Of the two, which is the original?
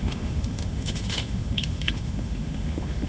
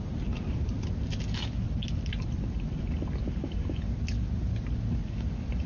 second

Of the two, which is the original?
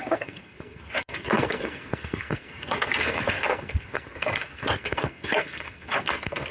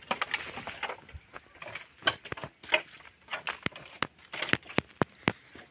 second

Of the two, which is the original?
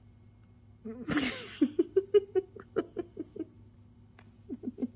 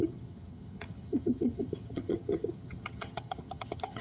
first